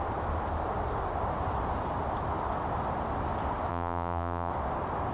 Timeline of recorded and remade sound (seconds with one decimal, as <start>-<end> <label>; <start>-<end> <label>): 0.0-3.7 recorded; 3.7-4.5 remade; 4.5-5.1 recorded